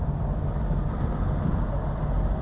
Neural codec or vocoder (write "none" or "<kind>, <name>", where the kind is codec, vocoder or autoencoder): none